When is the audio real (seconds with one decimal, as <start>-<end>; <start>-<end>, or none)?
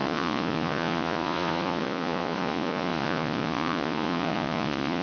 none